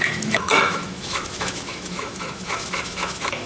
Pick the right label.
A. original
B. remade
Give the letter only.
B